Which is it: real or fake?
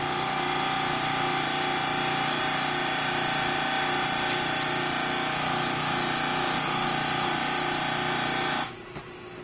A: real